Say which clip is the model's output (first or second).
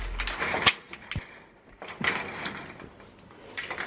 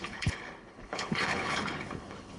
second